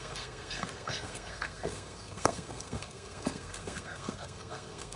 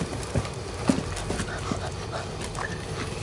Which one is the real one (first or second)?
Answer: second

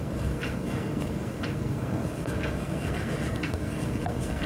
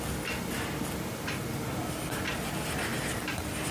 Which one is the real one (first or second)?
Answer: second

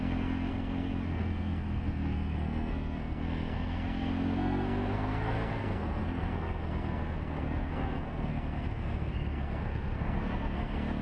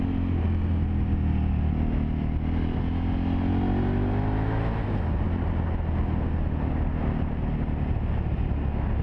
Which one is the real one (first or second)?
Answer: second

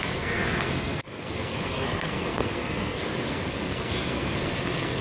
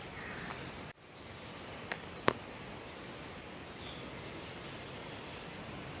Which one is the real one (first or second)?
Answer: second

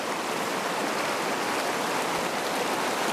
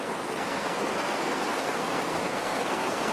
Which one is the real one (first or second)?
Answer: first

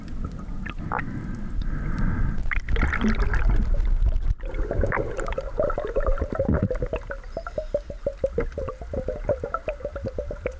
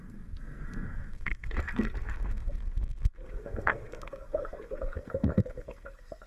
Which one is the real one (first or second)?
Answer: first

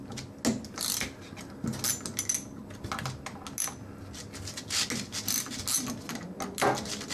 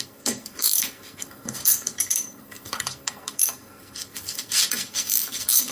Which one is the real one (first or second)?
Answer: first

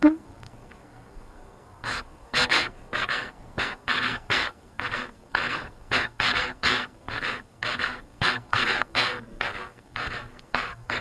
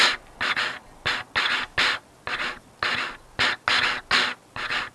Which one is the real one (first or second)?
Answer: second